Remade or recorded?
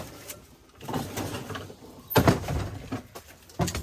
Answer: recorded